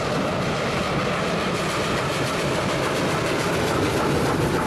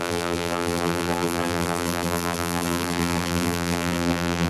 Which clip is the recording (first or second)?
first